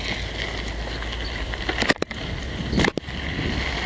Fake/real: real